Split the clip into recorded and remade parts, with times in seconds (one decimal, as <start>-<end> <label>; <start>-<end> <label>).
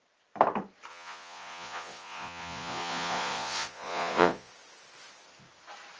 0.0-0.9 recorded; 0.9-4.5 remade; 4.5-6.0 recorded